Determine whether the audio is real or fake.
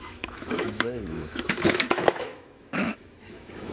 fake